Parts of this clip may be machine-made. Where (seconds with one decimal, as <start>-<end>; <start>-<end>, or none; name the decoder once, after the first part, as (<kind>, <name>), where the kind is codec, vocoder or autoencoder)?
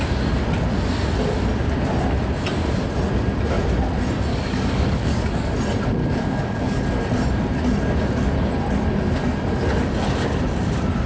4.3-5.5 (codec, DAC); 6.0-6.8